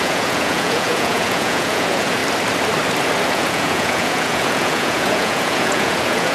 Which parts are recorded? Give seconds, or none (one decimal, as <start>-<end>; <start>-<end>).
2.2-3.3